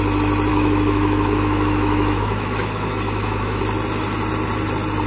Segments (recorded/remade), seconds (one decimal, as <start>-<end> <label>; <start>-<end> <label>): 0.0-0.5 recorded; 0.5-3.6 remade; 3.6-5.1 recorded